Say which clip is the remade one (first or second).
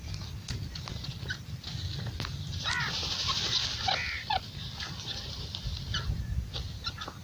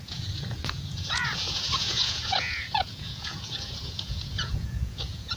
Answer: second